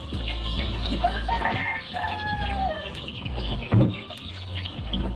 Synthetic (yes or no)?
yes